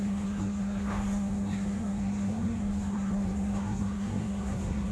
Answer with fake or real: fake